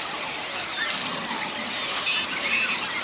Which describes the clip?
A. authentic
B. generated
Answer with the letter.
A